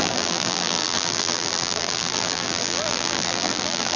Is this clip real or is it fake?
fake